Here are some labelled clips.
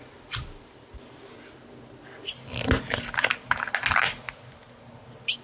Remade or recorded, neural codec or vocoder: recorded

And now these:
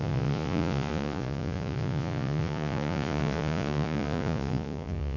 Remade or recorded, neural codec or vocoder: remade, vocoder, Vocos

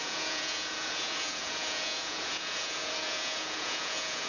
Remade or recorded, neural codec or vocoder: remade, vocoder, Vocos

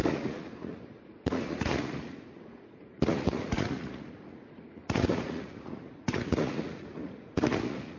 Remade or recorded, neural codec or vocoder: remade, vocoder, Vocos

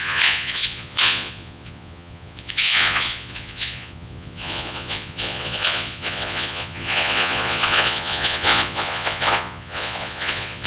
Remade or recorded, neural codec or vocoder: remade, vocoder, Vocos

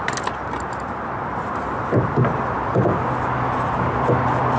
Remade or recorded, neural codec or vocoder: recorded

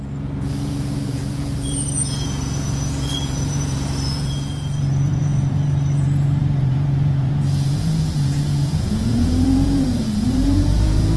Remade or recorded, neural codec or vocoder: remade, vocoder, Vocos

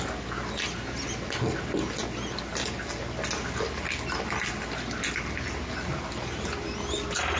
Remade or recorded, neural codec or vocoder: recorded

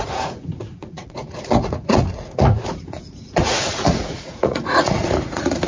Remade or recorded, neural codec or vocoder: remade, vocoder, Vocos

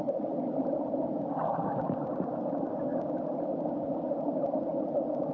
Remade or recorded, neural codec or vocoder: recorded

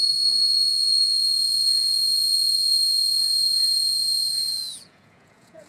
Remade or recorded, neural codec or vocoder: remade, vocoder, Vocos